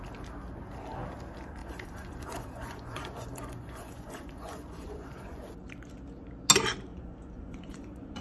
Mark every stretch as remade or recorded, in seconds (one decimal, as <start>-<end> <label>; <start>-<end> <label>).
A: 0.0-1.6 recorded; 1.6-5.4 remade; 5.4-6.9 recorded; 6.9-8.2 remade